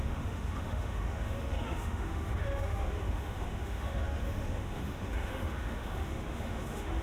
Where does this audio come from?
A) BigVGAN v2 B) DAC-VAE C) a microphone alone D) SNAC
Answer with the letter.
B